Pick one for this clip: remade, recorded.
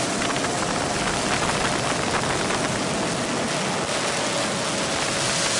recorded